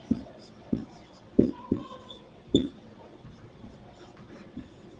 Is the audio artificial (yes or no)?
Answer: yes